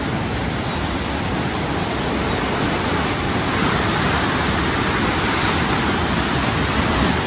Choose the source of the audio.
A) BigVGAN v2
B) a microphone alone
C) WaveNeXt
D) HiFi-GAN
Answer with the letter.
B